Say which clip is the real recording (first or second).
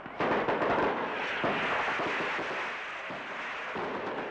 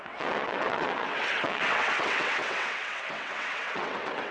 first